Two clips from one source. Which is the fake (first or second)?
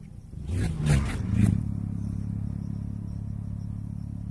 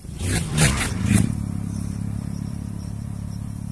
second